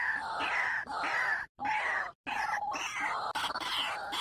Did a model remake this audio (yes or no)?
no